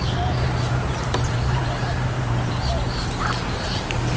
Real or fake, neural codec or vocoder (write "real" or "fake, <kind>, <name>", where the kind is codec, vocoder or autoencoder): fake, vocoder, BigVGAN v2